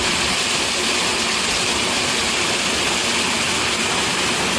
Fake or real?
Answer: real